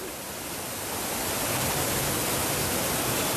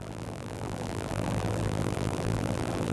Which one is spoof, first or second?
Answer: second